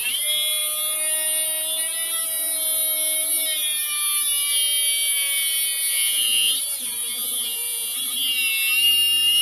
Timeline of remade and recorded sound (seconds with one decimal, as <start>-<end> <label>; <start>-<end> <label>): 0.0-5.9 recorded; 5.9-6.5 remade; 6.5-9.4 recorded